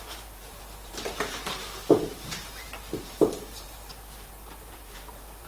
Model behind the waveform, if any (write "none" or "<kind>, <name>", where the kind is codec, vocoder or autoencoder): vocoder, BigVGAN v2